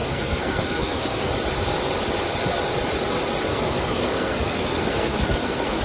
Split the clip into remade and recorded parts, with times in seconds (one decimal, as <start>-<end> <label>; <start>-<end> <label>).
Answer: 0.0-1.3 remade; 1.3-3.5 recorded; 3.5-5.8 remade